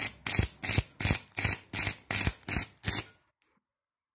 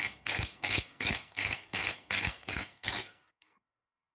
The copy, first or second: second